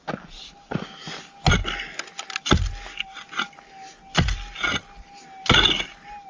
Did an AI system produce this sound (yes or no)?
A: no